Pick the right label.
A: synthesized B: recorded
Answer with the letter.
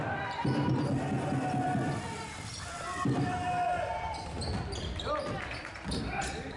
B